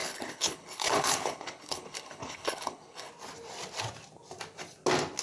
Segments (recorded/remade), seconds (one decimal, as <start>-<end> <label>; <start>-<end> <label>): 0.0-3.1 remade; 3.1-5.2 recorded